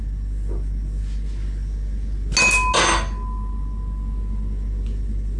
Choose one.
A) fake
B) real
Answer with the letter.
B